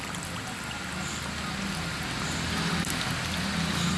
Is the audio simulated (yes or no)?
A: no